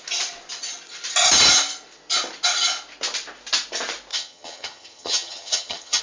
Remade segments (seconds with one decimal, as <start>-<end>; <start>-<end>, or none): 4.1-6.0